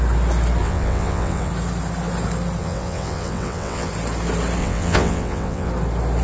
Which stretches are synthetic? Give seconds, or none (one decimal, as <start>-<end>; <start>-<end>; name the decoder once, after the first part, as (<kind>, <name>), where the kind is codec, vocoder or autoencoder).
0.6-1.5 (vocoder, WaveNeXt); 2.6-3.9; 4.6-5.7